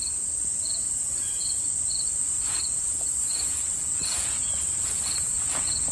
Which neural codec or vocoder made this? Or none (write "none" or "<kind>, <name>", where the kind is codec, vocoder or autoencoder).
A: vocoder, Vocos